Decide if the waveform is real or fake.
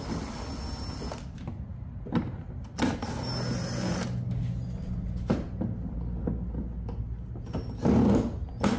real